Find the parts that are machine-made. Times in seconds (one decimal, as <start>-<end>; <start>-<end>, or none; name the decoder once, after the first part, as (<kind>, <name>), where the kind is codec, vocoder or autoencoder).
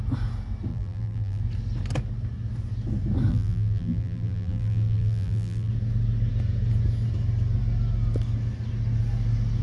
0.7-1.4 (vocoder, BigVGAN v2); 3.3-5.7